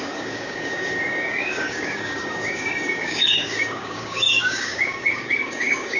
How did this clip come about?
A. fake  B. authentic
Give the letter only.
A